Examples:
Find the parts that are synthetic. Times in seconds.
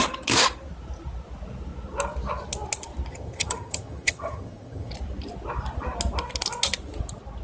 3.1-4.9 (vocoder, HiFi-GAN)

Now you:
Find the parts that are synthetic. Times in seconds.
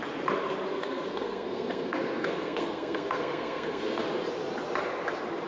0.7-4.0 (codec, SNAC)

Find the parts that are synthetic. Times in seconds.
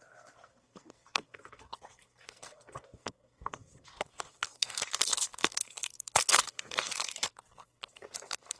0.0-8.6 (codec, SNAC)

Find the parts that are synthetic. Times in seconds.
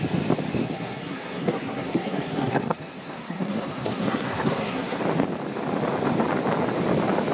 0.6-5.0 (codec, SNAC)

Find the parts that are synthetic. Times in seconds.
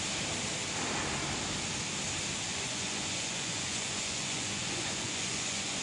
2.5-5.8 (vocoder, Vocos)